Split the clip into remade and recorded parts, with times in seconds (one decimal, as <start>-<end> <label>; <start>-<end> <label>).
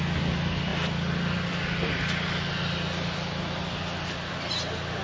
0.0-5.0 recorded